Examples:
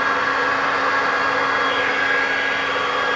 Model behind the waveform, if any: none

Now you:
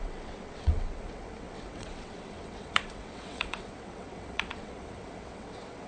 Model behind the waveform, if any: vocoder, WaveNeXt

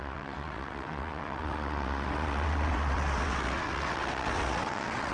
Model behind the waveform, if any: vocoder, WaveNeXt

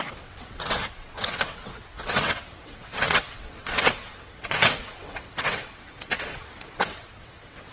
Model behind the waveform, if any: vocoder, WaveNeXt